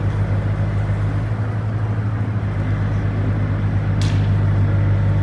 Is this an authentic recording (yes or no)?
yes